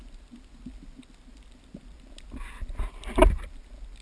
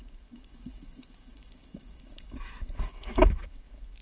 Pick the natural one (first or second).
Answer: first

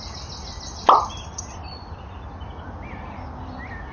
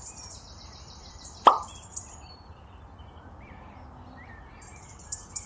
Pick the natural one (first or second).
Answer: first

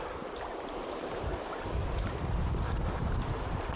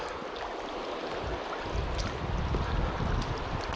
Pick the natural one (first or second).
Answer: second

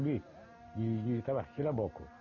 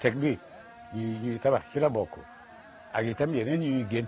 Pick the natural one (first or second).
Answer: first